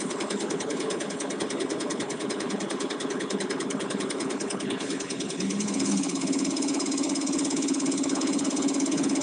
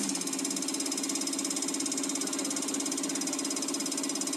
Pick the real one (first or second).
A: second